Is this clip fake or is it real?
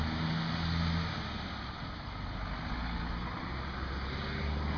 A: real